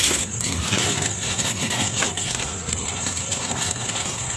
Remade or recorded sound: remade